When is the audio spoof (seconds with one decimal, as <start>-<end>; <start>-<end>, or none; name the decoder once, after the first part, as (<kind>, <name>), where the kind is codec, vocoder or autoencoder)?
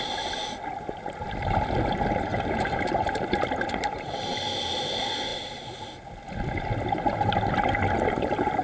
2.3-4.3 (vocoder, BigVGAN v2)